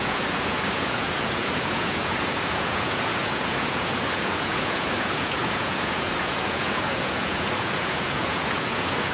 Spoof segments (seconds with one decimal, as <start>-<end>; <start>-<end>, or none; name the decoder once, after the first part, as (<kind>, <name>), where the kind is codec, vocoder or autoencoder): 0.0-9.1 (vocoder, Vocos)